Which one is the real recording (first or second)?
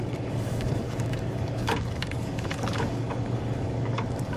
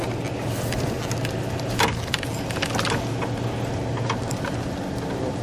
second